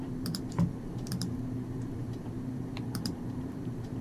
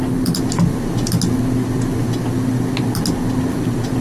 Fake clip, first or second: first